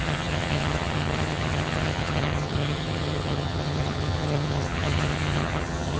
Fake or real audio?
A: fake